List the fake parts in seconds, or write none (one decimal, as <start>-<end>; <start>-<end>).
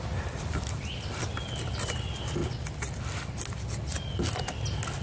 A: none